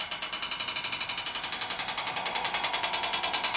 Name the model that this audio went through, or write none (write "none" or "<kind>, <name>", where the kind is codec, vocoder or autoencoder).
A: none